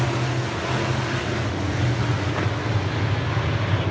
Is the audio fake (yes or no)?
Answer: no